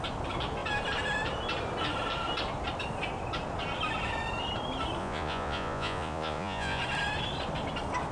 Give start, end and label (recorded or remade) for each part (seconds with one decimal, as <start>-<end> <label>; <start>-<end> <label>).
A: 0.0-5.0 recorded; 5.0-6.8 remade; 6.8-8.1 recorded